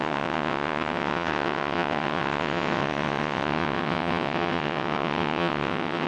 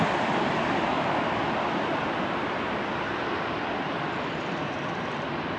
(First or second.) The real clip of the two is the second